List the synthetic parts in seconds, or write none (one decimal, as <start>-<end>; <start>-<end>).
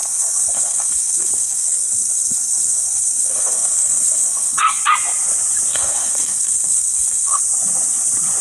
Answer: 0.0-4.8; 5.7-7.4